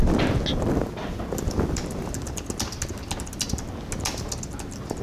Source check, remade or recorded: recorded